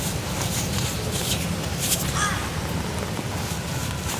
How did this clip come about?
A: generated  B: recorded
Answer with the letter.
B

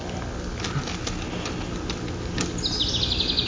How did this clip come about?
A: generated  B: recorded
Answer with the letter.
B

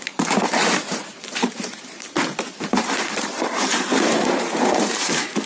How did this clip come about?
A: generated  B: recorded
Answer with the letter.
A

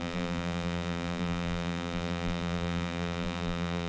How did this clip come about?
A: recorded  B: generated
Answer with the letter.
B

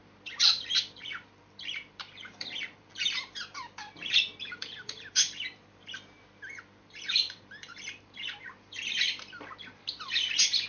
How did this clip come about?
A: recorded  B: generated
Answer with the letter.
B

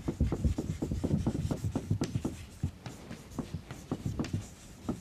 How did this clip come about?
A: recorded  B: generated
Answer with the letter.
B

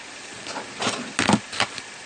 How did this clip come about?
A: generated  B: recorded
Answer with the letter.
B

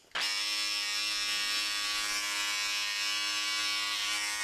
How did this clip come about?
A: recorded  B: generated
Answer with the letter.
A